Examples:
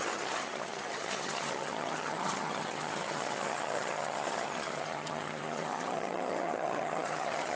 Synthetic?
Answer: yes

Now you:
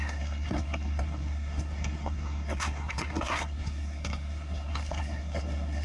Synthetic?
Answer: yes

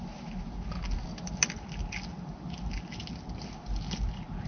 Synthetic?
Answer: no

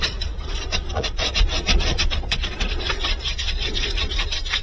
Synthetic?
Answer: yes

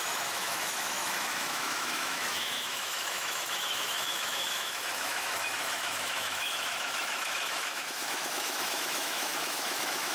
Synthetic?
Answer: yes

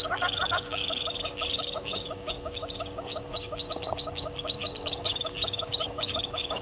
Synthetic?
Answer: yes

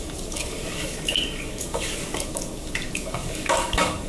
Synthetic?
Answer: yes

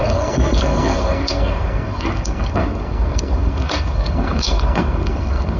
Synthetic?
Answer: yes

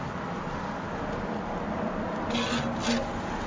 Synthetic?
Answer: no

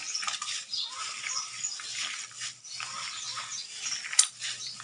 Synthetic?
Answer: no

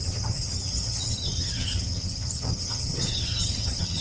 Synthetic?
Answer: yes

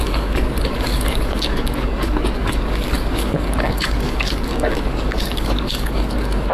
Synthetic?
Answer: yes